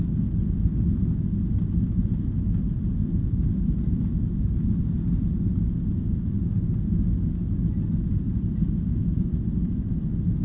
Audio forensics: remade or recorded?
recorded